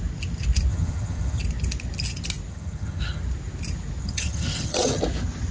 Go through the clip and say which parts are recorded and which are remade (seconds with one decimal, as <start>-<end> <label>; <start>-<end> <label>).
0.0-0.7 recorded; 0.7-1.4 remade; 1.4-2.5 recorded; 2.5-3.2 remade; 3.2-4.0 recorded; 4.0-5.0 remade; 5.0-5.5 recorded